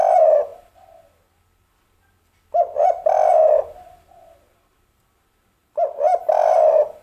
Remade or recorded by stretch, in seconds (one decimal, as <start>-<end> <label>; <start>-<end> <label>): 0.0-5.6 recorded; 5.6-6.2 remade; 6.2-7.0 recorded